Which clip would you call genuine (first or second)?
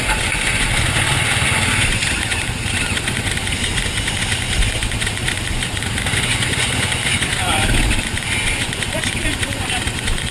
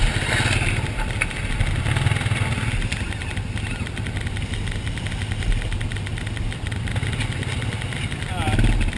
second